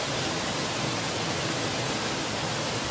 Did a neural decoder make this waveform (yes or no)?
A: no